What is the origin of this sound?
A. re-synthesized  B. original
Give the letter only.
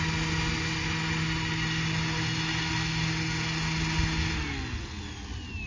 B